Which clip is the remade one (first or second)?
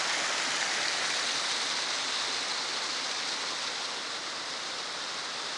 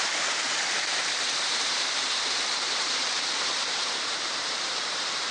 second